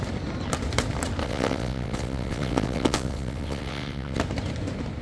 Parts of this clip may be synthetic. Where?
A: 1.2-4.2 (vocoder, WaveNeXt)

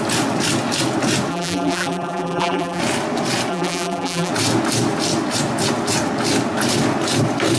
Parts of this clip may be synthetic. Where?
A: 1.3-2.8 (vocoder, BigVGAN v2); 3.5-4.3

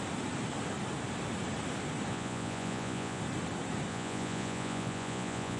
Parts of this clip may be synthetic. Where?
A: 2.1-3.2 (vocoder, Vocos); 3.9-5.6

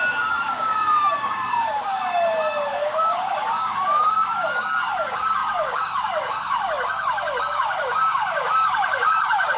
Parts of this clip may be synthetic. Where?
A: 0.0-9.6 (codec, DAC)

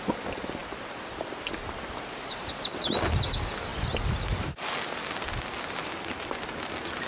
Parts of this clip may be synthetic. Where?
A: 3.7-4.4 (vocoder, BigVGAN v2); 5.8-6.4

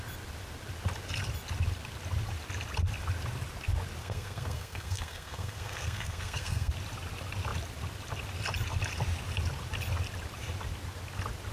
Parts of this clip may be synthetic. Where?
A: 4.0-6.7 (codec, SNAC)

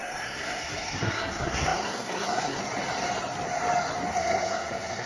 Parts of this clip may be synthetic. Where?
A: 0.0-2.6 (codec, SNAC); 4.1-5.1

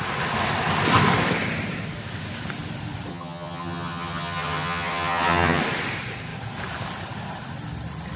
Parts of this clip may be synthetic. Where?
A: 3.1-5.6 (vocoder, HiFi-GAN)